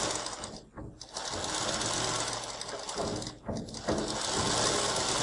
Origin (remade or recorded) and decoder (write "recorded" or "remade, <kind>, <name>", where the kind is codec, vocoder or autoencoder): recorded